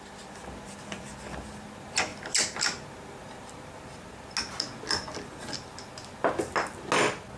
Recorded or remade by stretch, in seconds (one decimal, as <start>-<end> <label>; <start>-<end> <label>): 0.0-7.4 recorded